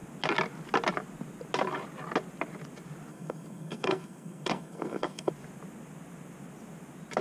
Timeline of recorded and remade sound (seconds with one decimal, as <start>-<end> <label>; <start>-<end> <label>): 0.0-3.1 recorded; 3.1-5.3 remade; 5.3-7.2 recorded

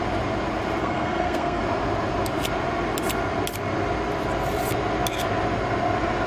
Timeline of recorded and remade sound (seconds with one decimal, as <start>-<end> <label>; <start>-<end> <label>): 0.0-0.8 recorded; 0.8-1.6 remade; 1.6-6.3 recorded

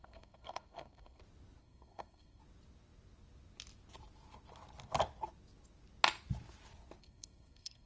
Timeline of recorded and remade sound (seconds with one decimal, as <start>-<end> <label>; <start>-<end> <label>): 0.0-1.2 remade; 1.2-1.6 recorded; 1.6-2.4 remade; 2.4-7.0 recorded; 7.0-7.9 remade